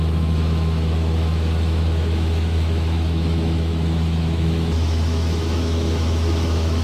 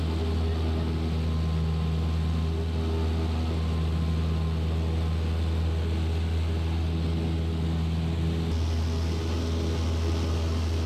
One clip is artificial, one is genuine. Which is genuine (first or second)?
second